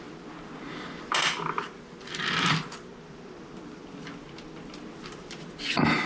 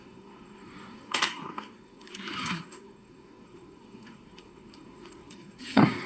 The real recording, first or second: first